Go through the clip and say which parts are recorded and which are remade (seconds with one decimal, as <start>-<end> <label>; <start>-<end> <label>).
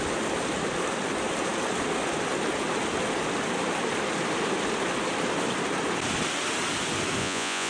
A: 0.0-7.2 recorded; 7.2-7.7 remade